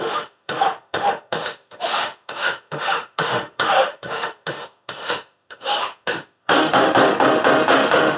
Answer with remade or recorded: remade